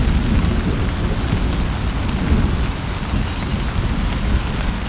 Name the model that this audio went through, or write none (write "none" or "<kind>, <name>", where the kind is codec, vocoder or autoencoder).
none